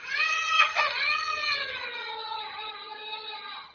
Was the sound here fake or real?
fake